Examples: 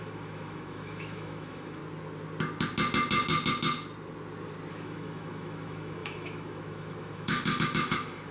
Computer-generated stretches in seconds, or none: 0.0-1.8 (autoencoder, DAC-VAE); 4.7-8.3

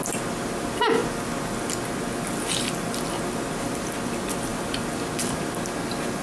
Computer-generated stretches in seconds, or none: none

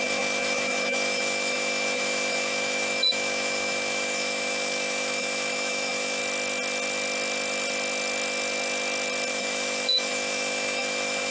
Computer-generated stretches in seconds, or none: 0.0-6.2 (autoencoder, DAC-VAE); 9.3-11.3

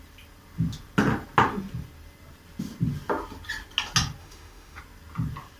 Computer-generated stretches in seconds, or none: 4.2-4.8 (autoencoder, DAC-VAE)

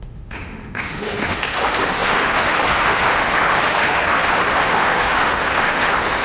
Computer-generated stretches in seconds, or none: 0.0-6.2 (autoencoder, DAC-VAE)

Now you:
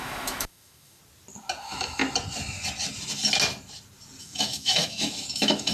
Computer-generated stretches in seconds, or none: 0.0-1.0 (autoencoder, DAC-VAE); 1.6-2.0; 4.2-5.7

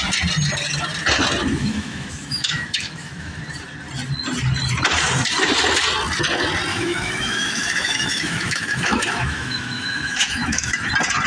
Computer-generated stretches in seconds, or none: 1.5-3.4 (autoencoder, DAC-VAE); 6.7-10.9